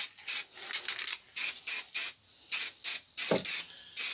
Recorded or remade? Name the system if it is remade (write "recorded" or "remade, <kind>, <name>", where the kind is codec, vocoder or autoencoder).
recorded